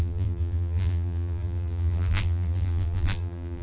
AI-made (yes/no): yes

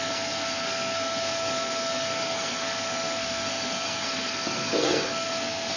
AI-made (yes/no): yes